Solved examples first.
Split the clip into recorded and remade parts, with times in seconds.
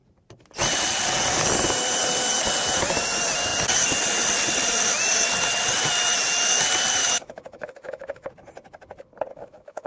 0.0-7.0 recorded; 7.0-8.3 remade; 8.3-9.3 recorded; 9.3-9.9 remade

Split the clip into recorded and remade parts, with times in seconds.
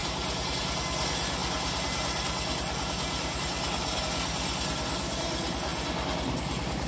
0.0-6.9 recorded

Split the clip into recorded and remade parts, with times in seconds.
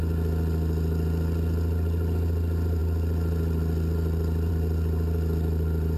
0.0-6.0 recorded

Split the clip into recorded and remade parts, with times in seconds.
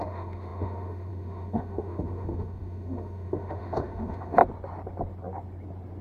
0.0-4.4 remade; 4.4-6.0 recorded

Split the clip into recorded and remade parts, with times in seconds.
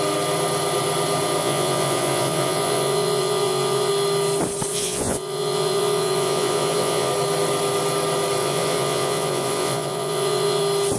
0.0-1.4 recorded; 1.4-3.9 remade; 3.9-4.7 recorded; 4.7-7.1 remade; 7.1-8.4 recorded; 8.4-10.6 remade; 10.6-11.0 recorded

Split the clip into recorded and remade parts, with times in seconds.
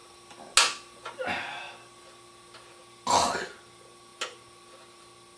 0.0-5.4 recorded